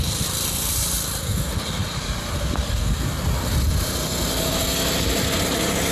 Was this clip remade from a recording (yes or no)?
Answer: no